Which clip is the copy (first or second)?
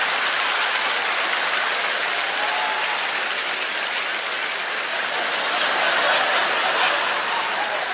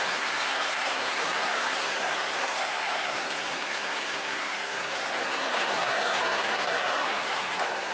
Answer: second